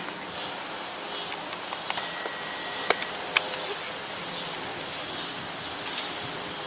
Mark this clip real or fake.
real